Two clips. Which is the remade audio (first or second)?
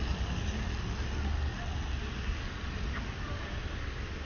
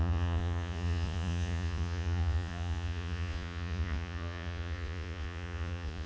second